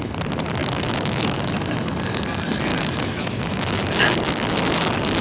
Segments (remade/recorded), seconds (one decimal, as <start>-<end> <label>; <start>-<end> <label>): 0.0-0.6 recorded; 0.6-1.5 remade; 1.5-2.7 recorded; 2.7-4.6 remade; 4.6-5.2 recorded